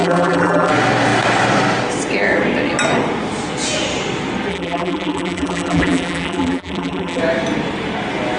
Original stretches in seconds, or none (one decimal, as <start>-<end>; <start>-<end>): 0.7-4.5; 7.2-8.4